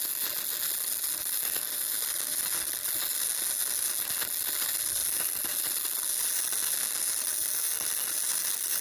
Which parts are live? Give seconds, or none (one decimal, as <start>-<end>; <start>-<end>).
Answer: 0.0-8.8